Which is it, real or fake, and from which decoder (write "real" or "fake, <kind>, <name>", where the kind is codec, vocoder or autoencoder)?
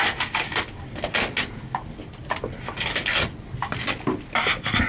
real